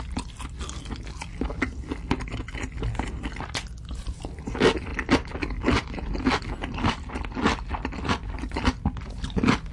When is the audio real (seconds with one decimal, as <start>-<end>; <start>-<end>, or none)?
0.0-9.7